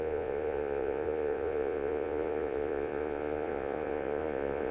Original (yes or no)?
no